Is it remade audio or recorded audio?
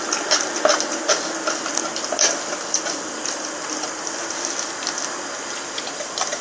recorded